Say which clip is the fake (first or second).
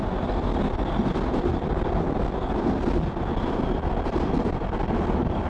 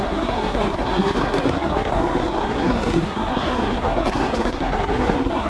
second